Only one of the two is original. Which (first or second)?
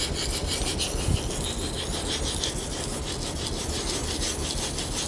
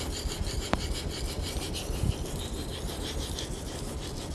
first